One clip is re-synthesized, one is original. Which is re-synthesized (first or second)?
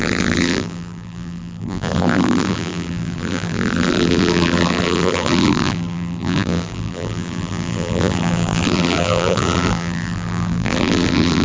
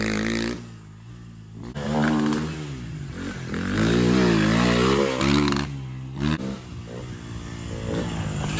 first